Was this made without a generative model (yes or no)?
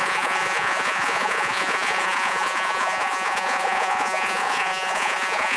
no